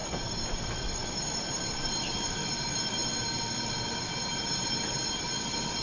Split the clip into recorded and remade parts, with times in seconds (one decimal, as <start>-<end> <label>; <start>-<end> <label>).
0.0-3.0 remade; 3.0-3.9 recorded; 3.9-5.8 remade